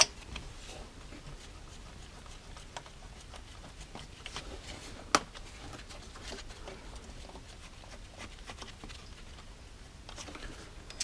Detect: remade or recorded recorded